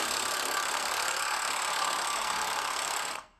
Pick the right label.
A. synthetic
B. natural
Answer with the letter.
A